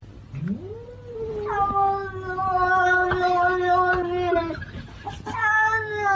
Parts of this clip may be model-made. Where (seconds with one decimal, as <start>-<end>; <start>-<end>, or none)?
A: 5.4-6.2